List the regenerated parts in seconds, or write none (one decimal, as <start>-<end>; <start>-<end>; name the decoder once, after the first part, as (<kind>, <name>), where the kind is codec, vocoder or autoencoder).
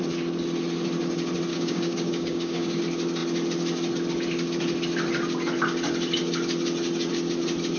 1.5-2.8 (codec, DAC)